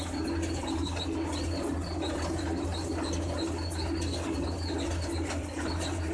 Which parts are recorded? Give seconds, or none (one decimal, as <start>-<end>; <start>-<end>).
0.0-6.1